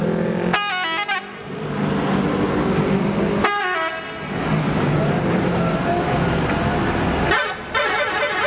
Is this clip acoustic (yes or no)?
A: yes